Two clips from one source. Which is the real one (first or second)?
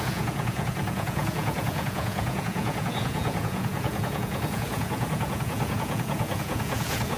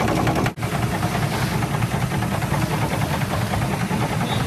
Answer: second